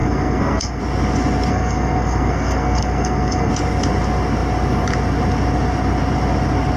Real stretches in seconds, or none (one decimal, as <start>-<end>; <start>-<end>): 0.8-1.5; 3.5-6.8